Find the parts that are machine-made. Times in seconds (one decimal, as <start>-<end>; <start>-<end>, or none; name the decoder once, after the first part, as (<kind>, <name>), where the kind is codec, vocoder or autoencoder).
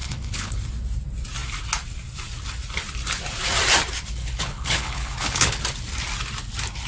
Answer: 0.0-0.5 (codec, HILCodec); 4.2-5.6